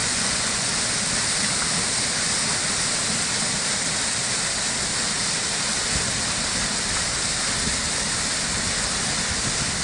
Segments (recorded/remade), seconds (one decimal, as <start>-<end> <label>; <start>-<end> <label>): 0.0-0.7 remade; 0.7-9.8 recorded